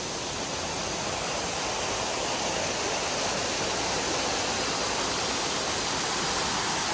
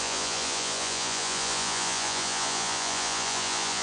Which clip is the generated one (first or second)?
second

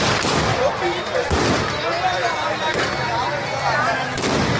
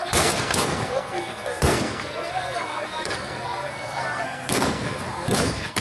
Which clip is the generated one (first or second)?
second